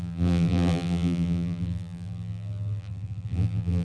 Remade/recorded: remade